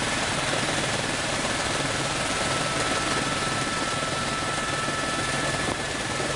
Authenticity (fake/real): fake